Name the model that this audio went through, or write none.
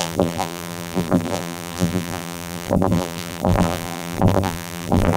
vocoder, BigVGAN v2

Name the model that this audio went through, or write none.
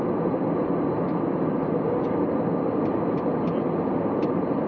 none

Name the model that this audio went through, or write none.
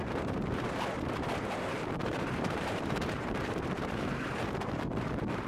vocoder, BigVGAN v2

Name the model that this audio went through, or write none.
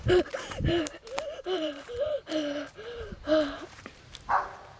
vocoder, BigVGAN v2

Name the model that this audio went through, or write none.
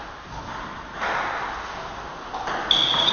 none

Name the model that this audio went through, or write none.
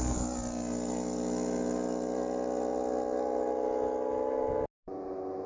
none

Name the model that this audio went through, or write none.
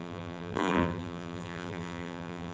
vocoder, BigVGAN v2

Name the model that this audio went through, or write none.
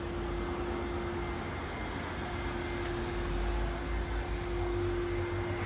none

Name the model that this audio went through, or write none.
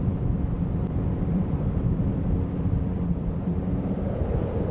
vocoder, BigVGAN v2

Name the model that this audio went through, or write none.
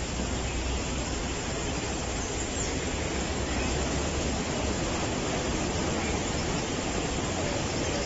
none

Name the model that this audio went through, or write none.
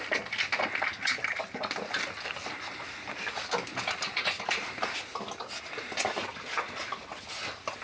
none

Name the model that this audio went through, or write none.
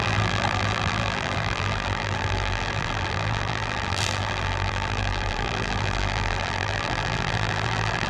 vocoder, BigVGAN v2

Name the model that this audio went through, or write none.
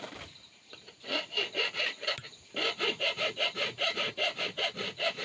vocoder, BigVGAN v2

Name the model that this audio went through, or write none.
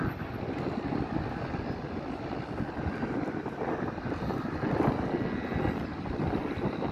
vocoder, BigVGAN v2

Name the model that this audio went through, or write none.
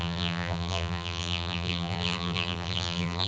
vocoder, BigVGAN v2